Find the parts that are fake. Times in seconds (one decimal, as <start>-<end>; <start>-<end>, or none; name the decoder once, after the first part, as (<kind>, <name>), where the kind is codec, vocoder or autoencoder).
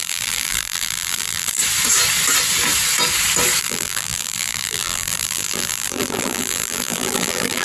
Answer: 0.0-1.6 (vocoder, BigVGAN v2); 3.6-7.6